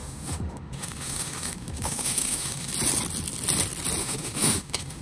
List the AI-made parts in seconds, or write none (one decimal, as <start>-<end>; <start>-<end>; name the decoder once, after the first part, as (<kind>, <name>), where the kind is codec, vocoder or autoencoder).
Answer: 0.0-2.7 (autoencoder, DAC-VAE); 4.0-5.0